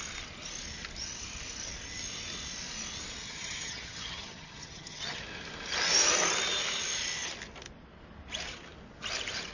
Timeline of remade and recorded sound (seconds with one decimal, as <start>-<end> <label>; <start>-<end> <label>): 0.0-3.2 recorded; 3.2-5.2 remade; 5.2-9.5 recorded